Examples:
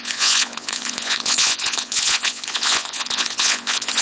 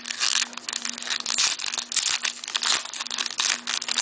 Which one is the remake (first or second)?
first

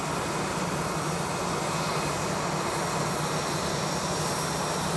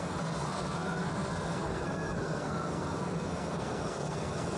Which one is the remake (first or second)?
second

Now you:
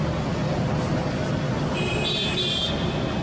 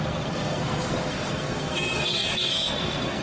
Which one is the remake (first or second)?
second